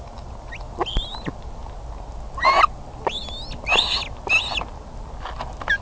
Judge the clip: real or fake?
real